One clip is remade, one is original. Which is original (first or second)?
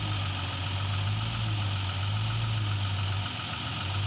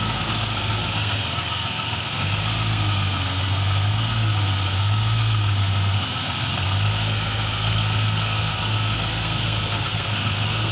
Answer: first